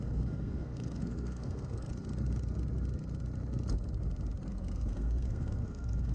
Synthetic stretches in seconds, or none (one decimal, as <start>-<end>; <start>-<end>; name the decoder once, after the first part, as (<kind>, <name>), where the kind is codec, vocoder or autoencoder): 0.0-1.9 (codec, SNAC); 4.5-6.1